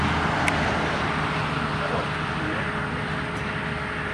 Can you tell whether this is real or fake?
real